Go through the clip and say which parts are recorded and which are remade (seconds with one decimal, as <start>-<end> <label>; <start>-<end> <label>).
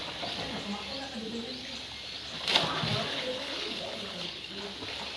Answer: 0.0-3.1 recorded; 3.1-4.6 remade; 4.6-5.2 recorded